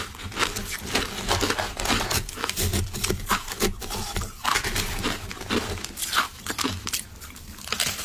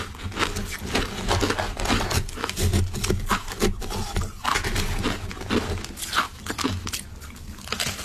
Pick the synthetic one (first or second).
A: first